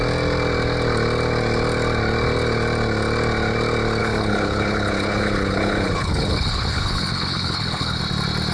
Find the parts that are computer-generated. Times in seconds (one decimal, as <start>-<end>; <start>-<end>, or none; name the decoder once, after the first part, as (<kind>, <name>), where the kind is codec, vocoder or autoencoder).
4.0-8.0 (codec, HILCodec)